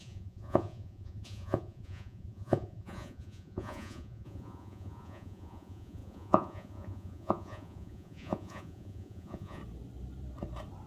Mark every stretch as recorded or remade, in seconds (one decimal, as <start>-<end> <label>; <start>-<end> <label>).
0.0-9.6 remade; 9.6-10.9 recorded